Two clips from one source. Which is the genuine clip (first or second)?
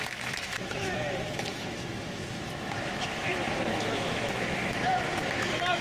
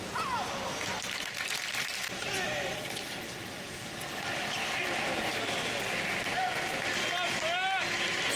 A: second